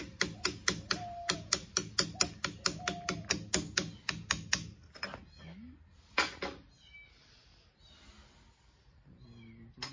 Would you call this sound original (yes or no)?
yes